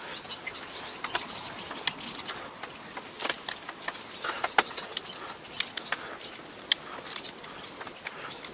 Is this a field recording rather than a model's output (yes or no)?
yes